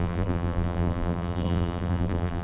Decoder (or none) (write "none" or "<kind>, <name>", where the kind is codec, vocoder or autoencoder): vocoder, BigVGAN v2